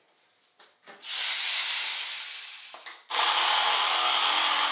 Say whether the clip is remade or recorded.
recorded